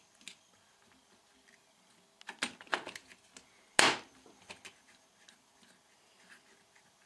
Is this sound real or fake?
real